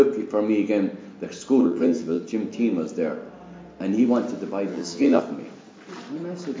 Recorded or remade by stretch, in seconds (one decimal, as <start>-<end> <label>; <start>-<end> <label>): 0.0-1.6 recorded; 1.6-2.2 remade; 2.2-4.7 recorded; 4.7-5.2 remade; 5.2-6.6 recorded